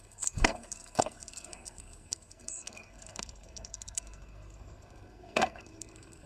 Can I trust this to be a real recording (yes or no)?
no